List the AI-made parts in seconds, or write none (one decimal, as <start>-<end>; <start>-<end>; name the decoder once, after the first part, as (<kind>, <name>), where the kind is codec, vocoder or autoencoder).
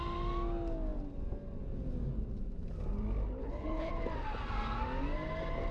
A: 3.4-3.9 (codec, HILCodec)